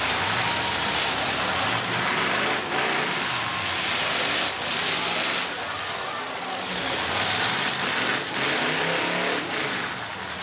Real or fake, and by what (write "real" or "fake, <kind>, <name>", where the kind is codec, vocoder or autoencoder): real